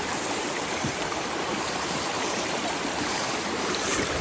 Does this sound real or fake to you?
fake